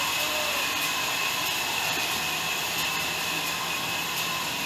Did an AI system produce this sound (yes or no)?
yes